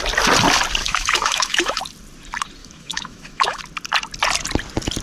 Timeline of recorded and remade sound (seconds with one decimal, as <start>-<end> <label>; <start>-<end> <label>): 0.0-0.8 recorded; 0.8-1.8 remade; 1.8-2.6 recorded; 2.6-3.6 remade; 3.6-5.0 recorded